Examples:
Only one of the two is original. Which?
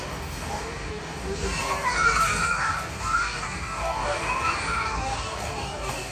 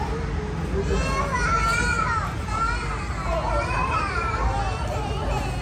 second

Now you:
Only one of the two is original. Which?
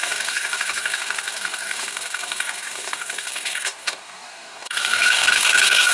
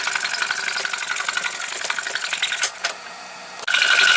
second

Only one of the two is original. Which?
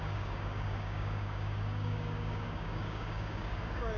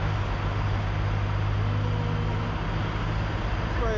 second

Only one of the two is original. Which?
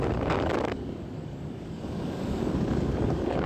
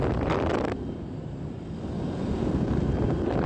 second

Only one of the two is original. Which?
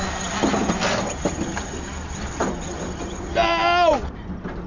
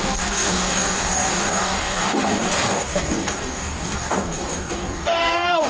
first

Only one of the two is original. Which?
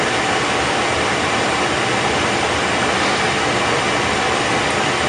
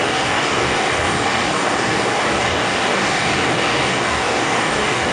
first